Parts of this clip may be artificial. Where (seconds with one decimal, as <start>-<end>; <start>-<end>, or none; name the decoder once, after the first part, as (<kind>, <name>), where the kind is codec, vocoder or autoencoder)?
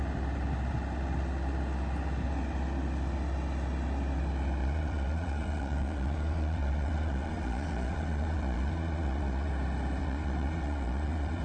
4.6-9.5 (vocoder, Vocos); 10.0-11.4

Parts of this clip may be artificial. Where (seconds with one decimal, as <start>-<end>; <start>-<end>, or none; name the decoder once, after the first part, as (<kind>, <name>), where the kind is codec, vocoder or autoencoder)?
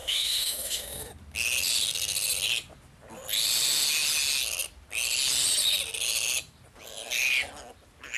0.0-1.1 (autoencoder, DAC-VAE)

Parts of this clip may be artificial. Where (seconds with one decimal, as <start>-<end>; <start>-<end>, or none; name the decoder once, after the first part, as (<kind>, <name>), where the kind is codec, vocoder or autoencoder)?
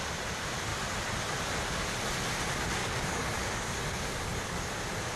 2.8-4.7 (codec, DAC)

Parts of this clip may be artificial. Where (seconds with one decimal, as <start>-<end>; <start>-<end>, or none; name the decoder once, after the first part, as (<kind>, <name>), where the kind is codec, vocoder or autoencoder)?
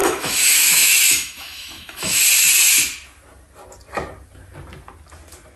0.0-2.2 (autoencoder, DAC-VAE)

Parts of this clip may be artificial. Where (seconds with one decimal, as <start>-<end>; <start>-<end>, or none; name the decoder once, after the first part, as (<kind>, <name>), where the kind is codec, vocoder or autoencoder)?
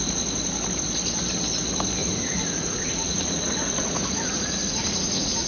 2.0-5.5 (vocoder, Vocos)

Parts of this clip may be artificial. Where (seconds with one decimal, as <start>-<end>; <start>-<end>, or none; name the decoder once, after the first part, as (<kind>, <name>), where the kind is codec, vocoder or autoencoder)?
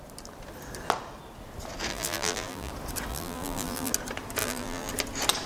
1.9-2.7 (vocoder, BigVGAN v2); 3.1-3.9; 4.4-4.9